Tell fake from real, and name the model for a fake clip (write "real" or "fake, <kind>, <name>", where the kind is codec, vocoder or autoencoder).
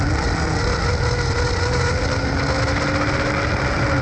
real